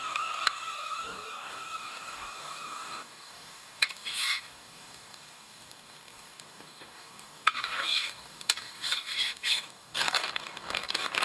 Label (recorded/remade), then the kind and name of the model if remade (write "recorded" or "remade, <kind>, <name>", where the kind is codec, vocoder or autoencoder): remade, codec, DAC